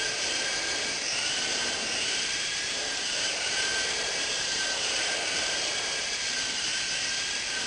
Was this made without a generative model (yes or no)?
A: no